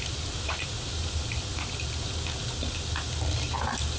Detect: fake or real real